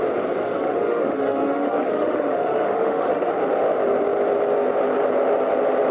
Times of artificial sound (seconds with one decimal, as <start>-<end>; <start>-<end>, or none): 0.4-3.3